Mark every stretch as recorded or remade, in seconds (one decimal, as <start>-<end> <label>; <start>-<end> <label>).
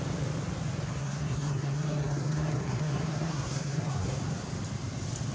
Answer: 0.0-1.0 recorded; 1.0-4.2 remade; 4.2-5.3 recorded